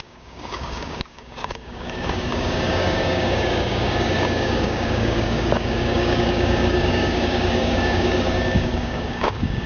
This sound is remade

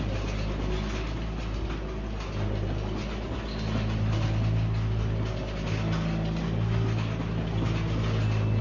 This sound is recorded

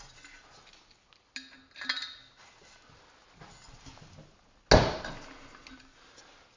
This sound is recorded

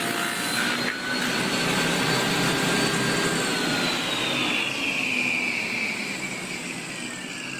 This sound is recorded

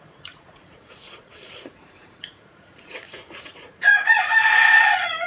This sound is remade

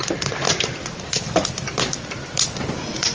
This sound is remade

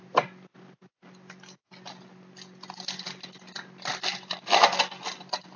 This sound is recorded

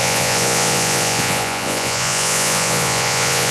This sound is remade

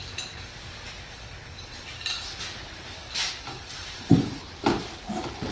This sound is recorded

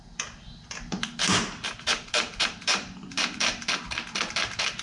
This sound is remade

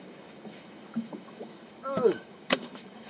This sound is remade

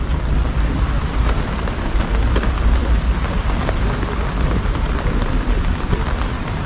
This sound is remade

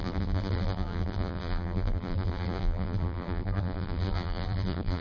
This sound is remade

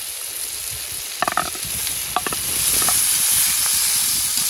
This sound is recorded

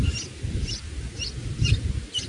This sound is recorded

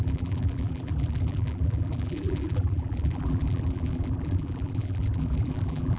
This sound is remade